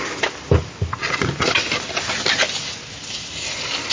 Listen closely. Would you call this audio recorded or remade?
recorded